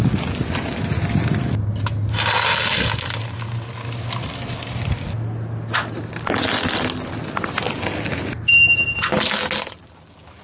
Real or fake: real